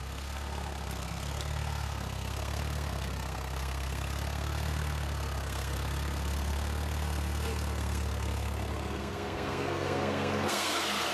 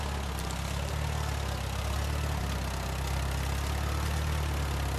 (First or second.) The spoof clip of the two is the first